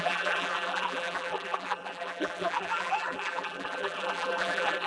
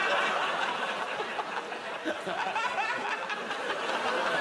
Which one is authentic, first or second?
second